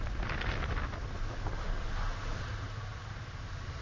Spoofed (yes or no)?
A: no